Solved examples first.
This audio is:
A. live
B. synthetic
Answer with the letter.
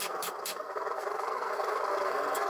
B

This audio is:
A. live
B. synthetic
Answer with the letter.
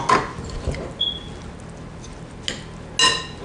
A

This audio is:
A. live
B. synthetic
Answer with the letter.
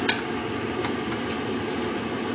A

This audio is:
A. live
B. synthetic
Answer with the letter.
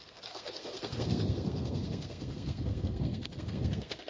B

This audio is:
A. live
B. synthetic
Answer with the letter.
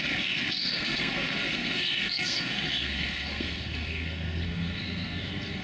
B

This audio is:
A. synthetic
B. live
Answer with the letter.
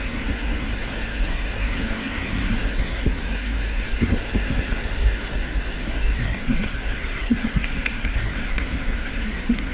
A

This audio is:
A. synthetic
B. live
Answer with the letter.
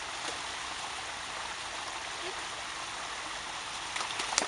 B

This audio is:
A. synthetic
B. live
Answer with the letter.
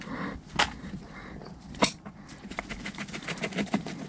B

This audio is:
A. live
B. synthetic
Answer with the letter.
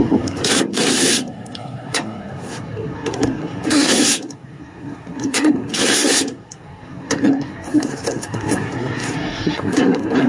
B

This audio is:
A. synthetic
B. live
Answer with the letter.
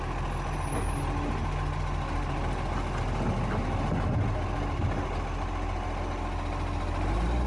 B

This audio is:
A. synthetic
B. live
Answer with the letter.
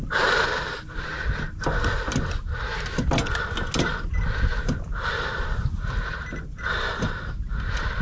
B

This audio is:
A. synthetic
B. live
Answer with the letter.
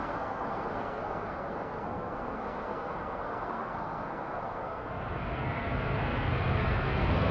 A